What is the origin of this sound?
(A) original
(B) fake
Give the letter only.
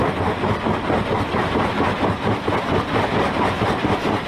A